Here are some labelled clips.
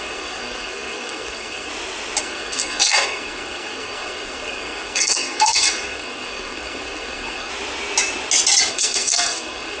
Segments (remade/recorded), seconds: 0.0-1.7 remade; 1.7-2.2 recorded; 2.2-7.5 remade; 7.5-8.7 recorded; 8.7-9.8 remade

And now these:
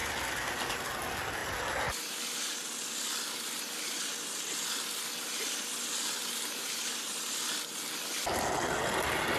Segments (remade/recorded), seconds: 0.0-9.4 recorded

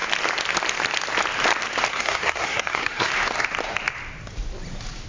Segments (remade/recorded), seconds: 0.0-1.9 recorded; 1.9-3.1 remade; 3.1-5.1 recorded

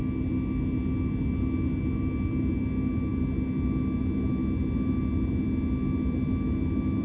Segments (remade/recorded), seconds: 0.0-7.0 recorded

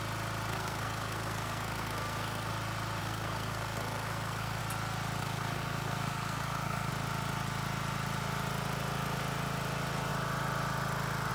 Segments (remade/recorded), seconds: 0.0-0.5 recorded; 0.5-2.5 remade; 2.5-3.0 recorded; 3.0-4.6 remade; 4.6-5.2 recorded; 5.2-6.9 remade; 6.9-11.3 recorded

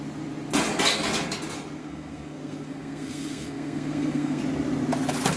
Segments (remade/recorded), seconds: 0.0-1.8 recorded; 1.8-4.4 remade; 4.4-5.4 recorded

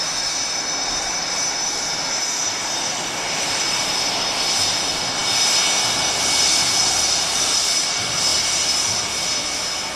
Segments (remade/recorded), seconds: 0.0-8.3 recorded; 8.3-9.1 remade; 9.1-10.0 recorded

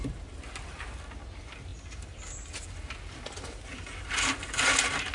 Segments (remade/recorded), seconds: 0.0-5.1 recorded